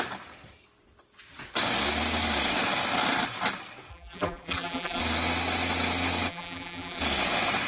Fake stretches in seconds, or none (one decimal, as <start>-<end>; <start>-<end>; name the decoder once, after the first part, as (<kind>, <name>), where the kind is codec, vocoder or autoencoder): 3.9-5.0 (vocoder, BigVGAN v2); 6.3-7.0